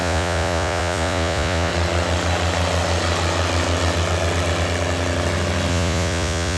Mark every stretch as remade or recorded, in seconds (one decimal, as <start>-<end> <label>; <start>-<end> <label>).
0.0-1.7 remade; 1.7-5.7 recorded; 5.7-6.6 remade